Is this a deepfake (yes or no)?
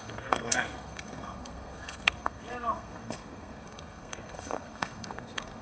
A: yes